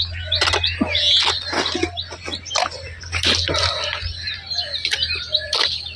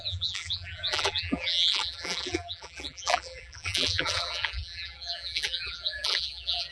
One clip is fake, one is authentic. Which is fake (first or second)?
second